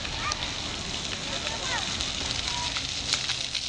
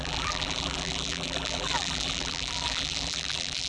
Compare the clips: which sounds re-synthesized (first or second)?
second